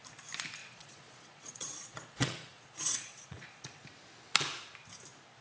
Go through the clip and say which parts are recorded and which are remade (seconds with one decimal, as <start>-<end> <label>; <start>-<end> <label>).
0.0-0.6 recorded; 0.6-3.8 remade; 3.8-5.4 recorded